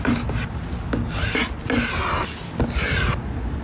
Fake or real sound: real